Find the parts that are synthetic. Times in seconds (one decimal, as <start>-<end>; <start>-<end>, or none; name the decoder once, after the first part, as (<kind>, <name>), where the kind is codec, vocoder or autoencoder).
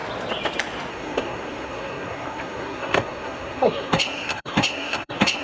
0.9-5.4 (codec, SNAC)